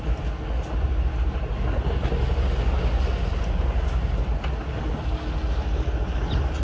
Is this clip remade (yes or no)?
no